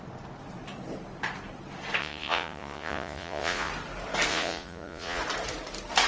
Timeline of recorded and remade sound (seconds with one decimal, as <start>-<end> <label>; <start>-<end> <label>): 0.0-2.0 recorded; 2.0-3.7 remade; 3.7-4.3 recorded; 4.3-5.2 remade; 5.2-6.1 recorded